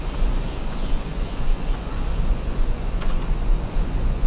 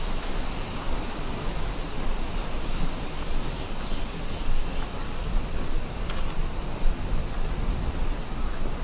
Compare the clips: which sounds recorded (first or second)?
second